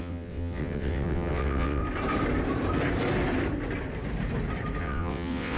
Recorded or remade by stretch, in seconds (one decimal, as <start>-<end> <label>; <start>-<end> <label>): 0.0-1.8 remade; 1.8-4.8 recorded; 4.8-5.6 remade